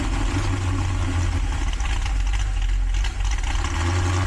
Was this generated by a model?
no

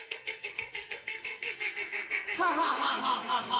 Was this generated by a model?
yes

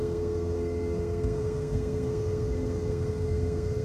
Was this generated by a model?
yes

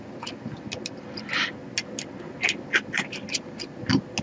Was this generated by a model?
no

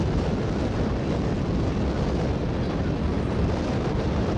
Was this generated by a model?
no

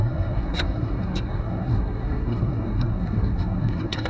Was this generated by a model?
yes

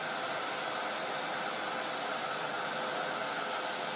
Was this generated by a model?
no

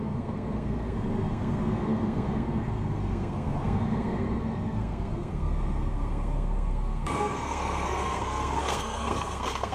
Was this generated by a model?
yes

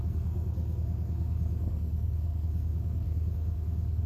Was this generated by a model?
yes